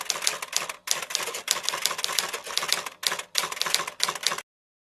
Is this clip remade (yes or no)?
no